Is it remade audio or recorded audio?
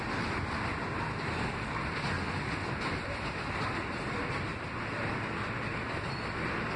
recorded